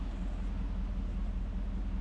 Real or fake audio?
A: real